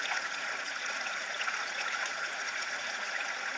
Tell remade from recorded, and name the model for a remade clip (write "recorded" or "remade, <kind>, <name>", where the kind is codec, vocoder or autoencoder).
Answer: remade, vocoder, Vocos